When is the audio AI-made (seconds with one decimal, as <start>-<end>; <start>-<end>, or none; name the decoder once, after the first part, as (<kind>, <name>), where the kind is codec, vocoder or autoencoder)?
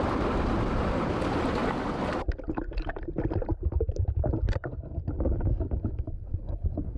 none